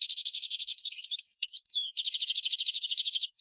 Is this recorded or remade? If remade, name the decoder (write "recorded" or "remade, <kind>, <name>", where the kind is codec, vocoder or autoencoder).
remade, codec, SNAC